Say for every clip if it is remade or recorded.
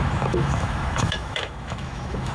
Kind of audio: remade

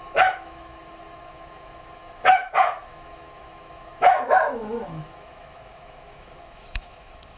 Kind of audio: remade